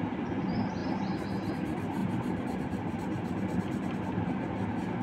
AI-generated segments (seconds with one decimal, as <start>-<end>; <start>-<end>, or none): none